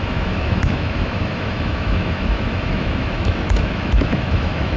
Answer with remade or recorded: remade